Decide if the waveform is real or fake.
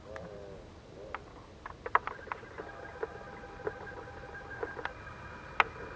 real